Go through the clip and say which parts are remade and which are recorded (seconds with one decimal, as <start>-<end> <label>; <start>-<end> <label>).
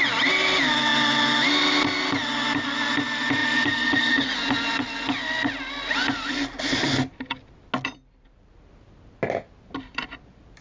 0.0-10.6 recorded